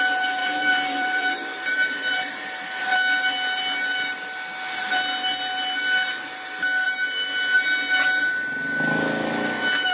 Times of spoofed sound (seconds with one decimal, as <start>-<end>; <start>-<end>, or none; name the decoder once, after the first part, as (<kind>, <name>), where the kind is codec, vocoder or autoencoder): 0.4-2.9 (vocoder, BigVGAN v2)